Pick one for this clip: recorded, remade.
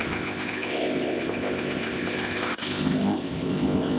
remade